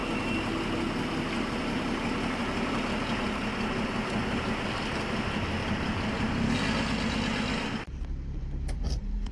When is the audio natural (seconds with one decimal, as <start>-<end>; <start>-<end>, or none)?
0.0-9.3